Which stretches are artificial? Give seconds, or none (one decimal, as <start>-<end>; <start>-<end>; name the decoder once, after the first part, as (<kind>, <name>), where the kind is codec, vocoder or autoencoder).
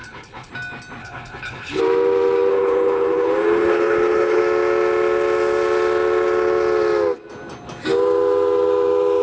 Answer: 0.0-0.5 (codec, HILCodec); 1.0-1.8; 2.5-4.4